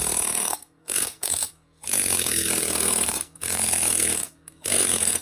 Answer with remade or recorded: remade